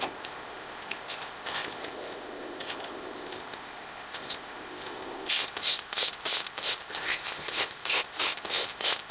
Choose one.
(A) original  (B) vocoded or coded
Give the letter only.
B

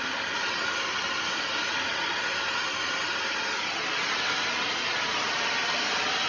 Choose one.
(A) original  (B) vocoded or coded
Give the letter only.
A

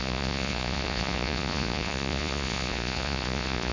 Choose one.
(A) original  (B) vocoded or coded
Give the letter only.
B